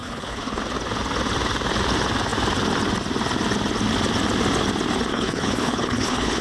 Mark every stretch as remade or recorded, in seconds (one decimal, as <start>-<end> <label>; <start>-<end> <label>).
0.0-0.6 remade; 0.6-5.1 recorded; 5.1-6.4 remade